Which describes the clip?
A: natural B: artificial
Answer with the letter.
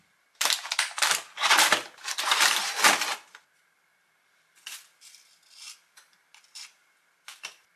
B